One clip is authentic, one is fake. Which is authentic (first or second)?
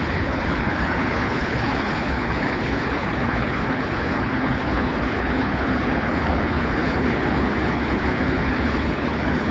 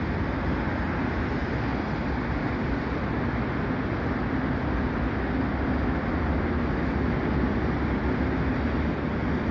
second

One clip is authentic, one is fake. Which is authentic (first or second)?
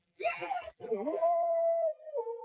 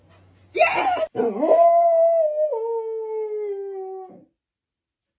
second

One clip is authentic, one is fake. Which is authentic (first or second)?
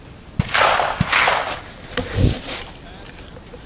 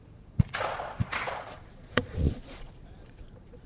first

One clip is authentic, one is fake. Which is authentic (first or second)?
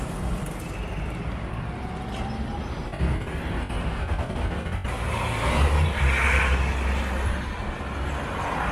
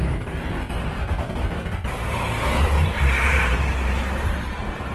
first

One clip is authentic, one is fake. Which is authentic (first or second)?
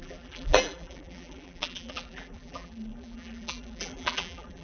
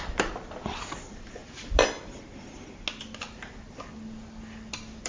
second